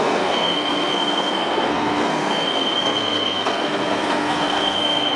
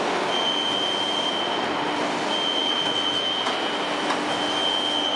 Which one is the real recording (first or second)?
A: second